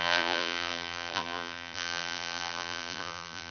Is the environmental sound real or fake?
fake